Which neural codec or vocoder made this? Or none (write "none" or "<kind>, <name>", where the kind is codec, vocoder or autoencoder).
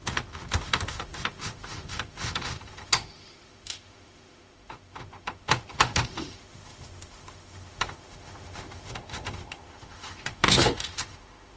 autoencoder, DAC-VAE